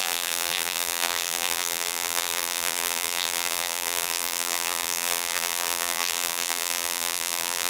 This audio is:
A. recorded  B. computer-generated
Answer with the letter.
B